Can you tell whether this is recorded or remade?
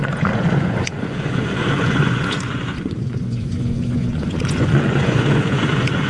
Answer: remade